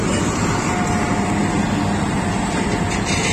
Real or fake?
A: real